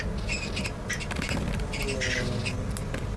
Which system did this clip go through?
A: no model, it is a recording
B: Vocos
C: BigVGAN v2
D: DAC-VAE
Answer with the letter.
A